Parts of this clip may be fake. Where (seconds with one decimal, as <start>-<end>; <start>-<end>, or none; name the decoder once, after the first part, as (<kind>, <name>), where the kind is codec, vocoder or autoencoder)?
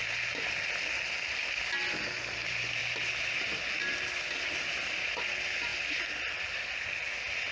none